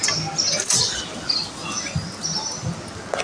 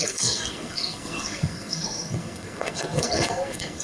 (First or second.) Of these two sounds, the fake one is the second